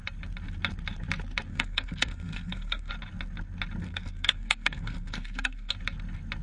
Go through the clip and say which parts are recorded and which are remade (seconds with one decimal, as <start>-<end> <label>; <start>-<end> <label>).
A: 0.0-1.5 recorded; 1.5-2.9 remade; 2.9-3.8 recorded; 3.8-5.7 remade; 5.7-6.4 recorded